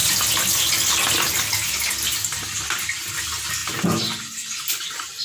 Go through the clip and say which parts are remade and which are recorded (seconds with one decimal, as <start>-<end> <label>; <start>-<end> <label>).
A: 0.0-5.2 recorded